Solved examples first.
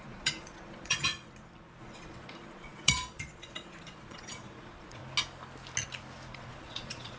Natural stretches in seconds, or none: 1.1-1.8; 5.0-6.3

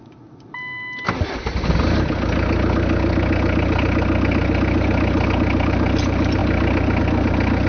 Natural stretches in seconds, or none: 0.0-7.7

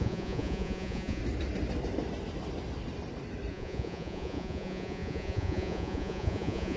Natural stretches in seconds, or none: 1.2-3.5

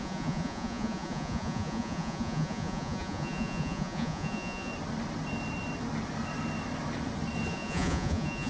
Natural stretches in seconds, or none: 4.7-7.5